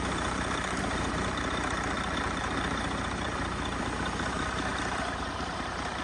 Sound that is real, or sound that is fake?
fake